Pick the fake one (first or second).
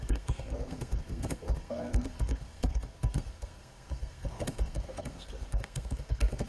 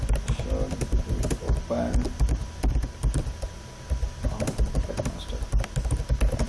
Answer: first